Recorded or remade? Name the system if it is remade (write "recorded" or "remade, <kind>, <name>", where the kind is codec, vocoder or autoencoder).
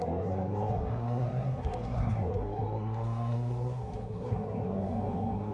remade, codec, SNAC